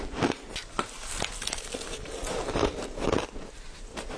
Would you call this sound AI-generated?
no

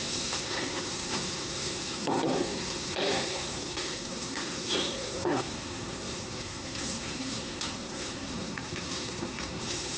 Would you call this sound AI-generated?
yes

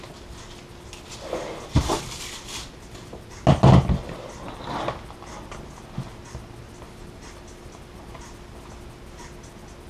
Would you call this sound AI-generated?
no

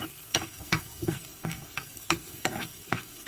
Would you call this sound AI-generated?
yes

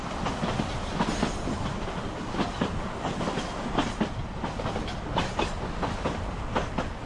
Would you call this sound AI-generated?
no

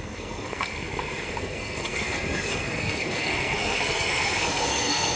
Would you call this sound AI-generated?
yes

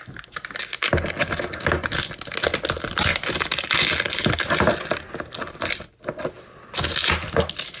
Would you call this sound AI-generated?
no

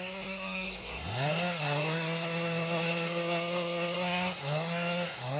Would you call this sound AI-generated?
yes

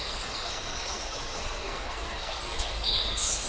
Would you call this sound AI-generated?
yes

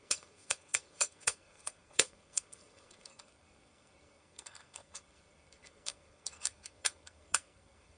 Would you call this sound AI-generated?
yes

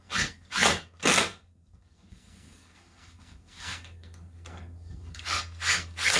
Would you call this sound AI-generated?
yes